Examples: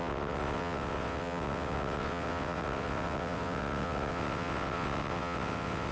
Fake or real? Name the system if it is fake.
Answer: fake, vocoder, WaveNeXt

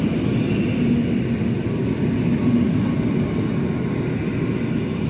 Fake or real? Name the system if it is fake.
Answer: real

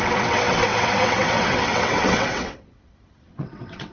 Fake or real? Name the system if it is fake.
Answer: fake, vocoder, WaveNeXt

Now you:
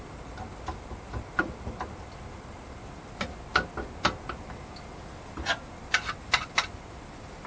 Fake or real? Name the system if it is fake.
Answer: real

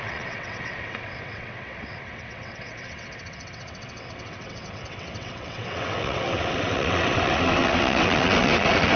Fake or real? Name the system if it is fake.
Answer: fake, vocoder, WaveNeXt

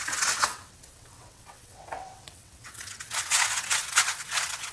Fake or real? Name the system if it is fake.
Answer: fake, vocoder, WaveNeXt